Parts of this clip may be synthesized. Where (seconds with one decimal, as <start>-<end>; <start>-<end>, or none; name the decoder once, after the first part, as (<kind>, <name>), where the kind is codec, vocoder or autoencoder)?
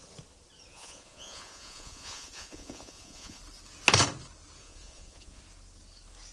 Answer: 0.7-3.4 (vocoder, Vocos); 4.6-5.4